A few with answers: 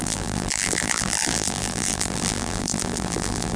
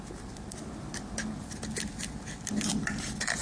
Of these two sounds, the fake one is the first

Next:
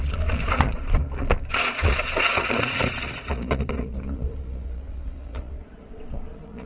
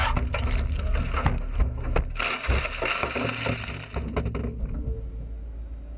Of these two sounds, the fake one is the first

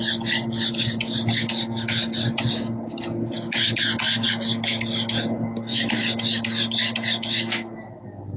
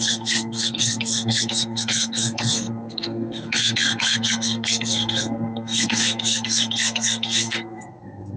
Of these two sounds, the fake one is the second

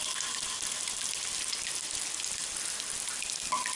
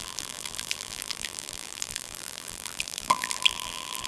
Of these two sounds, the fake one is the second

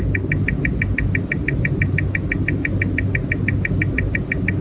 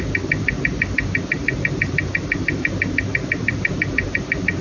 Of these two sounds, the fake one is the second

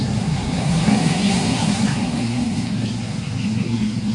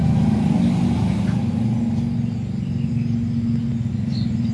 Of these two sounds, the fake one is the first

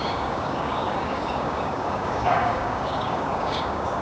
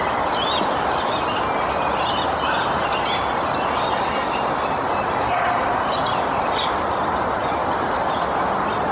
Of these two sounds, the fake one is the first